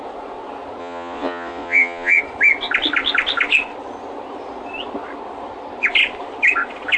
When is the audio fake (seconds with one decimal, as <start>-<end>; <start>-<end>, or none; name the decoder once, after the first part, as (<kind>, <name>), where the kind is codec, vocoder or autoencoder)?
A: 0.8-2.2 (vocoder, Vocos)